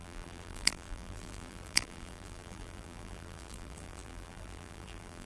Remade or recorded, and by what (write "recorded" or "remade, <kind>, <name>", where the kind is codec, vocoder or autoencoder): remade, vocoder, BigVGAN v2